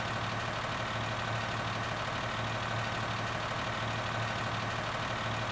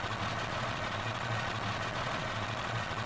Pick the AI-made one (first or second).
second